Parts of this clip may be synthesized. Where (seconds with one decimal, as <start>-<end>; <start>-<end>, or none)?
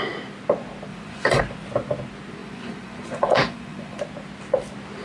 0.9-1.4; 2.4-4.0